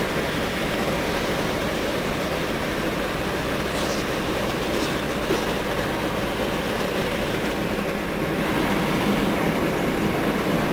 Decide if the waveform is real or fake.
real